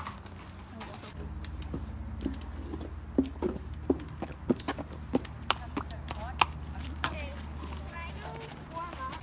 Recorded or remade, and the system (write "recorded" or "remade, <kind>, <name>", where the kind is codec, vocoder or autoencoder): recorded